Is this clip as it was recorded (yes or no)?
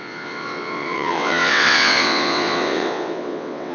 no